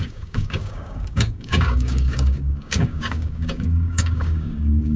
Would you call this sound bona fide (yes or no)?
no